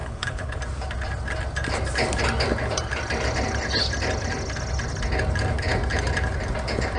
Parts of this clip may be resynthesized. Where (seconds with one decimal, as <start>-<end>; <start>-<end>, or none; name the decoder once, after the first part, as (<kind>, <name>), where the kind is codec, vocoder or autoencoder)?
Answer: 0.0-0.6 (codec, HILCodec)

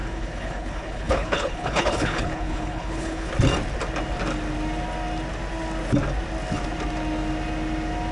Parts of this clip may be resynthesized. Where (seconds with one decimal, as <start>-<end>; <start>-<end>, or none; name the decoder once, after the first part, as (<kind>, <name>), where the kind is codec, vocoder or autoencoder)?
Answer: 0.0-3.3 (codec, HILCodec)